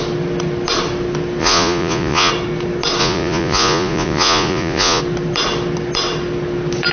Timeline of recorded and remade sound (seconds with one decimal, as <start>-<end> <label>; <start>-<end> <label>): 0.0-1.4 recorded; 1.4-2.3 remade; 2.3-3.0 recorded; 3.0-5.0 remade; 5.0-6.9 recorded